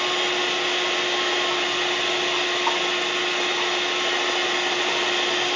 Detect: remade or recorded recorded